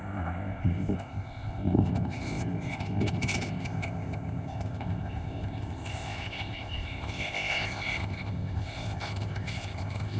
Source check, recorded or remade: remade